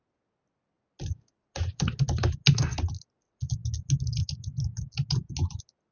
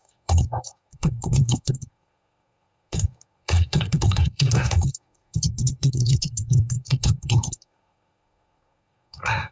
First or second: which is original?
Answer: first